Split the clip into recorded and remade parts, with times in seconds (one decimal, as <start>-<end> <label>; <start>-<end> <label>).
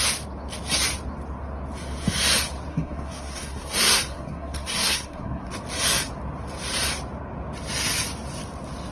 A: 0.0-2.7 recorded; 2.7-5.5 remade; 5.5-8.9 recorded